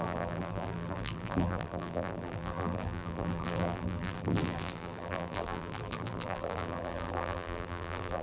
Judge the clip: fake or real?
fake